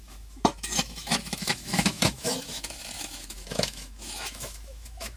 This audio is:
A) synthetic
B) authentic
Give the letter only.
A